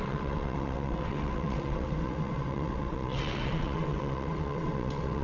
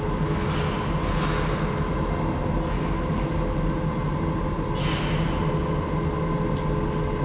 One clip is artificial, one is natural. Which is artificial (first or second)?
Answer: first